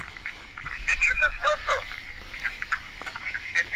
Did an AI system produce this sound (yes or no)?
yes